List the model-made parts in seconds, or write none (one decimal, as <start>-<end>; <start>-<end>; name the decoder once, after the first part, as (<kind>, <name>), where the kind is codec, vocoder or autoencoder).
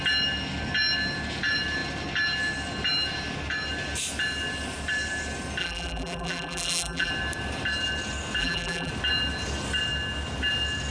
5.6-7.1 (vocoder, BigVGAN v2); 8.4-8.9